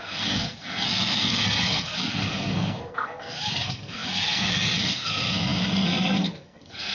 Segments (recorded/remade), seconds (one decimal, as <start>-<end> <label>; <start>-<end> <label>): 0.0-6.9 remade